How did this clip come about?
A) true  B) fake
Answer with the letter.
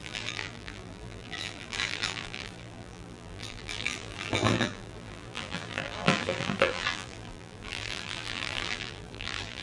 B